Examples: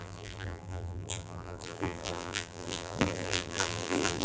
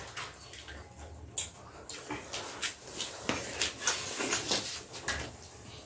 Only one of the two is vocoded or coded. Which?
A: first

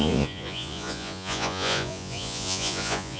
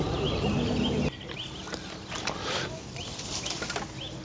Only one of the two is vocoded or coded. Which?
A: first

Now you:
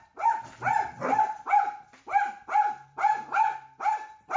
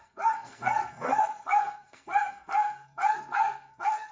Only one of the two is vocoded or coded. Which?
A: second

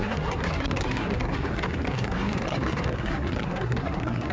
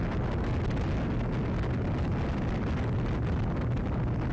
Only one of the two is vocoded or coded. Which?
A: first